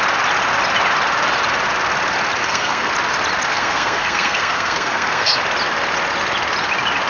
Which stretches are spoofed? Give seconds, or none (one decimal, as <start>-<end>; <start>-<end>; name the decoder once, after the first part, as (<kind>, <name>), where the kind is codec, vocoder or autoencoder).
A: 2.4-2.9 (codec, SNAC); 3.5-5.4